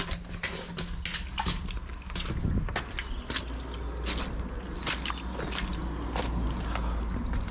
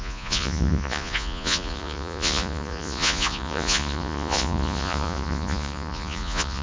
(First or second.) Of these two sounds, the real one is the first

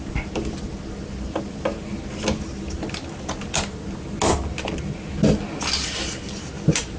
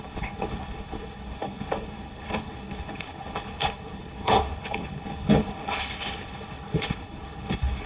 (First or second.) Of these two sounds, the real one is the first